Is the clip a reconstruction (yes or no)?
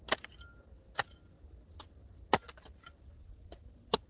no